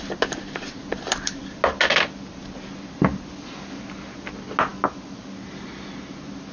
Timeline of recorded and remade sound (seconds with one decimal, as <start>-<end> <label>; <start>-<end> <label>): 0.0-6.5 recorded